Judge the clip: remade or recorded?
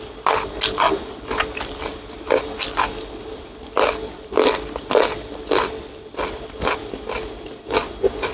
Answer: recorded